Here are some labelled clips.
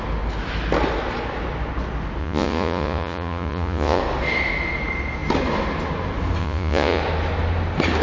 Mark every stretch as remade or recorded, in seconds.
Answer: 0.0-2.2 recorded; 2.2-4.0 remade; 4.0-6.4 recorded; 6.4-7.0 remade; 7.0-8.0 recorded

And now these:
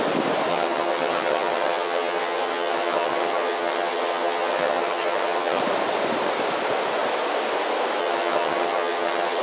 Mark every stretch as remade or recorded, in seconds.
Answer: 0.0-0.5 recorded; 0.5-5.6 remade; 5.6-8.0 recorded; 8.0-9.4 remade

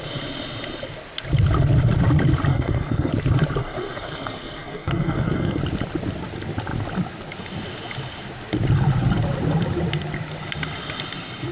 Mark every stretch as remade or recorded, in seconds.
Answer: 0.0-2.5 recorded; 2.5-3.1 remade; 3.1-3.6 recorded; 3.6-5.6 remade; 5.6-11.5 recorded

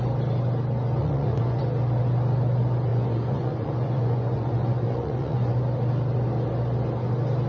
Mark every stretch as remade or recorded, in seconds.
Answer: 0.0-1.0 recorded; 1.0-1.6 remade; 1.6-2.9 recorded; 2.9-5.6 remade; 5.6-7.5 recorded

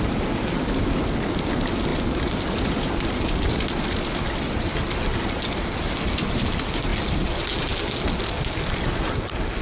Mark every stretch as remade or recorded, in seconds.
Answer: 0.0-9.6 recorded

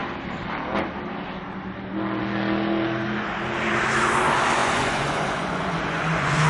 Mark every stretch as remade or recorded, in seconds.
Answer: 0.0-4.6 recorded; 4.6-6.5 remade

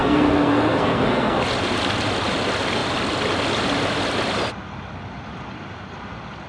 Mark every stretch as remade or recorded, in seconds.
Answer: 0.0-1.4 remade; 1.4-6.5 recorded

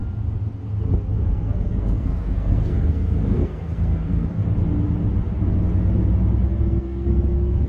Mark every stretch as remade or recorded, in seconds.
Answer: 0.0-1.2 recorded; 1.2-4.4 remade; 4.4-6.6 recorded; 6.6-7.7 remade